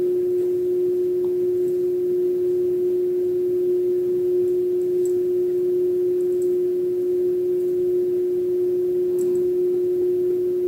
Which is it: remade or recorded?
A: recorded